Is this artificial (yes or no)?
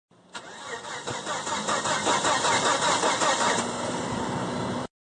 yes